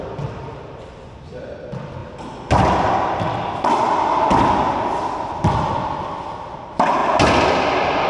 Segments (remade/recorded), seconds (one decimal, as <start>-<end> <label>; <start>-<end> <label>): 0.0-8.1 recorded

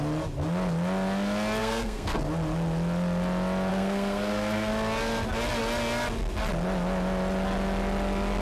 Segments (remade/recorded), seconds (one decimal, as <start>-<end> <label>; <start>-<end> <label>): 0.0-1.6 recorded; 1.6-2.2 remade; 2.2-3.7 recorded; 3.7-4.7 remade; 4.7-8.4 recorded

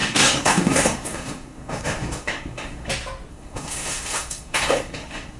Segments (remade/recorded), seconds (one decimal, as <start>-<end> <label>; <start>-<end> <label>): 0.0-2.9 remade; 2.9-3.3 recorded; 3.3-5.4 remade